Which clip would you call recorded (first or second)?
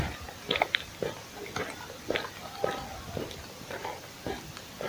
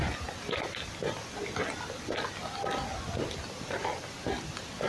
second